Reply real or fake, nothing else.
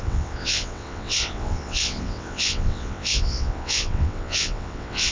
fake